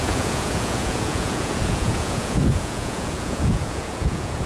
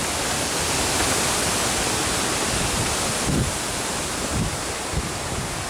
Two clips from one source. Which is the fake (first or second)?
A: first